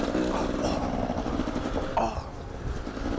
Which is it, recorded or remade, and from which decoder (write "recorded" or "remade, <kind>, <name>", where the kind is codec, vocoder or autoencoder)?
recorded